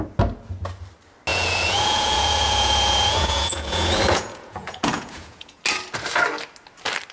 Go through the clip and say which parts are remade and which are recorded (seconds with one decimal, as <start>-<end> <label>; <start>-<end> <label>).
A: 0.0-1.3 recorded; 1.3-5.6 remade; 5.6-7.1 recorded